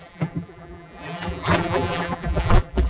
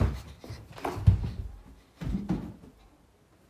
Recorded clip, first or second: second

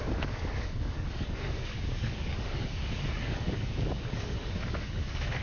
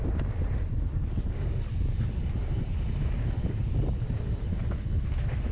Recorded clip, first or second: second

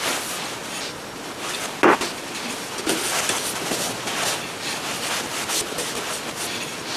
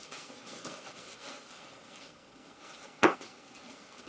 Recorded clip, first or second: first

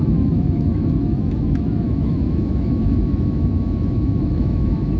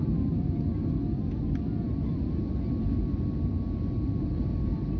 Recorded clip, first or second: second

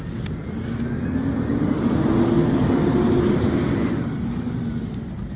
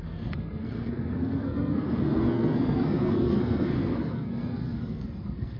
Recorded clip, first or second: first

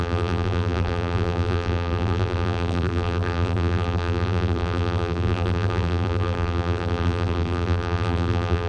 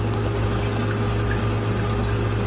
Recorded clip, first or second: second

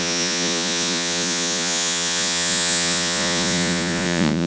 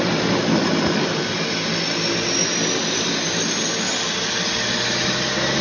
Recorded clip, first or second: second